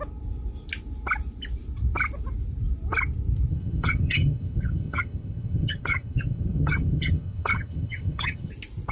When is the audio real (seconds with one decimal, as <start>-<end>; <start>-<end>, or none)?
0.0-3.5; 8.5-8.9